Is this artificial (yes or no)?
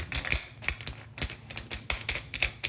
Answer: no